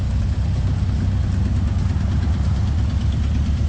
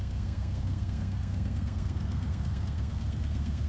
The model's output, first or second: second